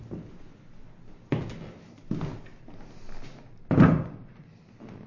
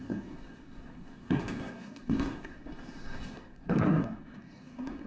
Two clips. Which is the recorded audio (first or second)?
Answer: first